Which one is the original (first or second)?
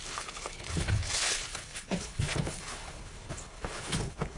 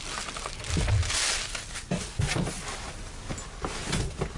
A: second